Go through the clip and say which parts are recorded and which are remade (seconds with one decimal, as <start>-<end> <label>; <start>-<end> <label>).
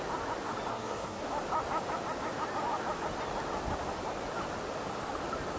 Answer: 0.0-0.7 recorded; 0.7-1.2 remade; 1.2-5.6 recorded